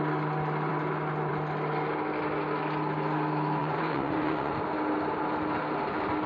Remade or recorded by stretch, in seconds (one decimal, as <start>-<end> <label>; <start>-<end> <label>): 0.0-3.6 recorded; 3.6-4.5 remade; 4.5-6.3 recorded